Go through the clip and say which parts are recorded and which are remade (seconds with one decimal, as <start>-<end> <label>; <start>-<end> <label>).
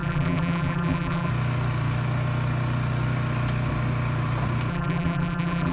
0.0-1.3 remade; 1.3-4.7 recorded; 4.7-5.7 remade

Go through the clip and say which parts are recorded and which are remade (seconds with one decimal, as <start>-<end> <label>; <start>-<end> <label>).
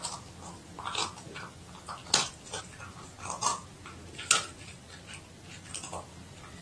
0.0-6.6 recorded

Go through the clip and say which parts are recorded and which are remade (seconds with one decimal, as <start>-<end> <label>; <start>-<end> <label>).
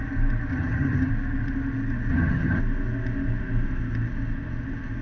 0.0-0.5 recorded; 0.5-1.1 remade; 1.1-2.1 recorded; 2.1-2.6 remade; 2.6-5.0 recorded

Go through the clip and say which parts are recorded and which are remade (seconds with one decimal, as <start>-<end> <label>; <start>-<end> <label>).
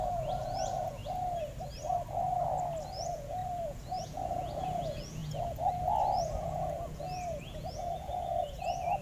0.0-1.0 remade; 1.0-2.8 recorded; 2.8-9.0 remade